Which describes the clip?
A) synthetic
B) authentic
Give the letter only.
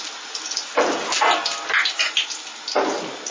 B